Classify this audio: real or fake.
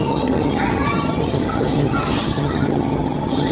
fake